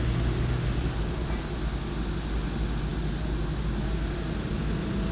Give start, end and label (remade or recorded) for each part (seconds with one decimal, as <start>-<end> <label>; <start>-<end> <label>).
0.0-5.1 recorded